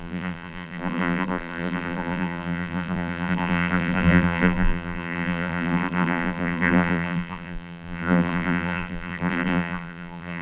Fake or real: fake